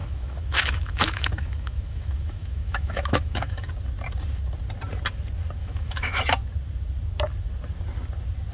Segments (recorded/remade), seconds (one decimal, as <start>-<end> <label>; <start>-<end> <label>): 0.0-3.7 remade; 3.7-5.6 recorded; 5.6-6.2 remade; 6.2-8.5 recorded